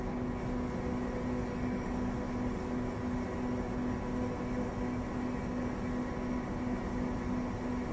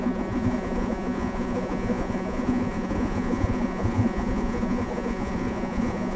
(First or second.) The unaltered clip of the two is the first